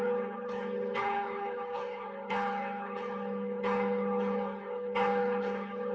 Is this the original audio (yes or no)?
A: no